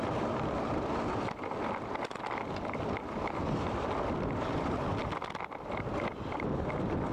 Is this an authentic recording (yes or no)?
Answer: yes